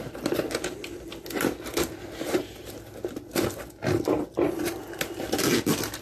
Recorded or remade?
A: recorded